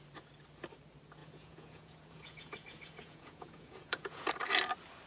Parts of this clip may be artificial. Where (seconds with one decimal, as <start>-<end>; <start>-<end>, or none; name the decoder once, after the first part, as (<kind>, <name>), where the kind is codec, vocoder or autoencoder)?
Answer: 1.2-4.3 (vocoder, Vocos)